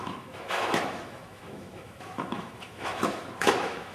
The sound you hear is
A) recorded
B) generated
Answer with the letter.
B